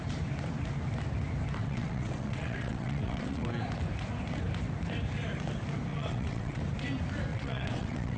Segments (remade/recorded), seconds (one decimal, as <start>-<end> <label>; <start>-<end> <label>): 0.0-1.6 recorded; 1.6-3.5 remade; 3.5-5.9 recorded; 5.9-6.6 remade; 6.6-7.3 recorded; 7.3-8.2 remade